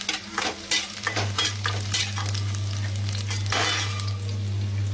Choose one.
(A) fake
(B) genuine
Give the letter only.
B